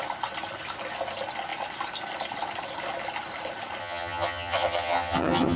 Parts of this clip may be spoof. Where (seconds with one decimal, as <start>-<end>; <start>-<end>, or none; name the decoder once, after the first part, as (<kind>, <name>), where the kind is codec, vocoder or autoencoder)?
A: 3.8-5.6 (vocoder, HiFi-GAN)